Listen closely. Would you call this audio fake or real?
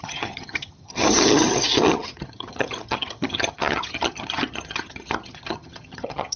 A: fake